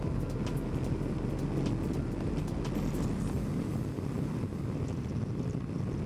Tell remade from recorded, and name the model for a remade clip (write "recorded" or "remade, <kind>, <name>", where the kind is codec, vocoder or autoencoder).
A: recorded